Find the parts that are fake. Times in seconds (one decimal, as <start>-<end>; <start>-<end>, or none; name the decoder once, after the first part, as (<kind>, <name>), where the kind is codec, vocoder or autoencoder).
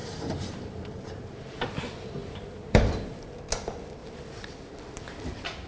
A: 0.0-1.8 (vocoder, BigVGAN v2); 2.2-3.3; 4.0-4.6